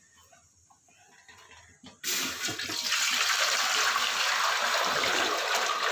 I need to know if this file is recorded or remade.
recorded